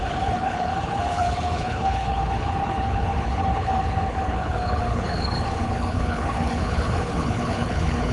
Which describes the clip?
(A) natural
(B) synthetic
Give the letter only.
B